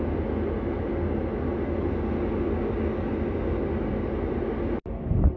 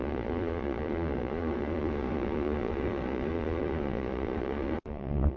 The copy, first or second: second